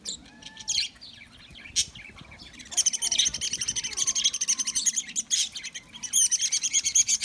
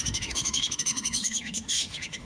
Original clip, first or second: first